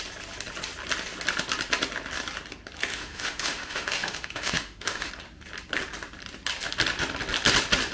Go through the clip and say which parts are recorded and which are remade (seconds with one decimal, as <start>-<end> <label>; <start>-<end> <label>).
0.0-2.9 recorded; 2.9-5.1 remade; 5.1-7.9 recorded

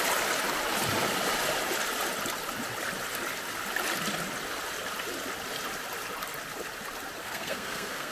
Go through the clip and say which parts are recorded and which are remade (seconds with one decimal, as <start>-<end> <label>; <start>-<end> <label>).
0.0-7.2 recorded; 7.2-8.1 remade

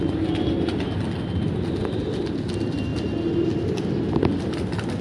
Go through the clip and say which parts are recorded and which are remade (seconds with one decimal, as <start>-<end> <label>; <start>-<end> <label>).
0.0-5.0 recorded